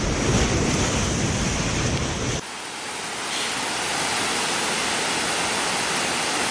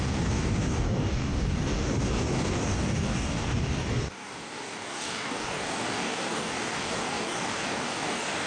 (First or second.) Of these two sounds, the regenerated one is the second